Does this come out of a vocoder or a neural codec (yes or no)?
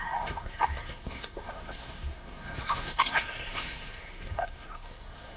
yes